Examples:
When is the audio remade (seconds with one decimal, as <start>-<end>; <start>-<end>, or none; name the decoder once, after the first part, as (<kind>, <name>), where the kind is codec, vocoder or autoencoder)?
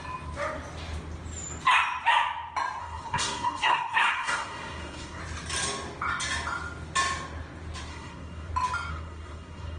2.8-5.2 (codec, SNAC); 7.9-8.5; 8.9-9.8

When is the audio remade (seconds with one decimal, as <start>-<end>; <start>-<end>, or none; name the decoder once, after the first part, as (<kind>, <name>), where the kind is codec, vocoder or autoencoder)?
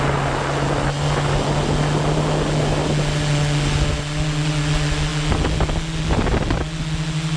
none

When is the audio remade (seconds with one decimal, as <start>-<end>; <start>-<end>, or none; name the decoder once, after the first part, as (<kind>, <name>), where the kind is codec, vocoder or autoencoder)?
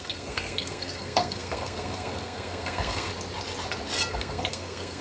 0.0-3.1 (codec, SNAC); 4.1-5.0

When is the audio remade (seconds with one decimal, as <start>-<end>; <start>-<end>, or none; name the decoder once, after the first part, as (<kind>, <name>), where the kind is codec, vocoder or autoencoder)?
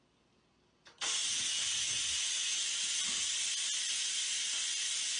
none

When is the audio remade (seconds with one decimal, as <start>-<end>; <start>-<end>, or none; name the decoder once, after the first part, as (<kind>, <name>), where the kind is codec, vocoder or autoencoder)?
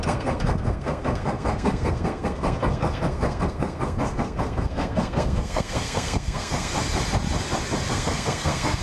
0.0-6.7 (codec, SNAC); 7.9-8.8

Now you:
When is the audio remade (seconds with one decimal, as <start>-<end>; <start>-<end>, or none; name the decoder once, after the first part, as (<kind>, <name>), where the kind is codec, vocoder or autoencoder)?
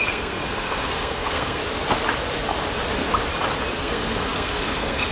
0.0-1.6 (codec, SNAC); 3.8-5.1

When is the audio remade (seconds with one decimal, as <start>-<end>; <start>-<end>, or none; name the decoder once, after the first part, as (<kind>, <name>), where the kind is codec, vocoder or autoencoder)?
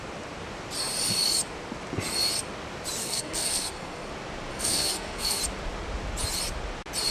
3.0-4.1 (codec, SNAC); 4.5-5.4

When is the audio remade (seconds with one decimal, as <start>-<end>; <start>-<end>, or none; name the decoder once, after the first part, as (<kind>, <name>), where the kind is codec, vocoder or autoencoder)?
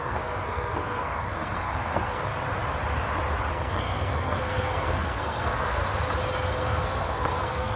0.0-2.3 (codec, SNAC); 3.5-5.8; 6.5-7.8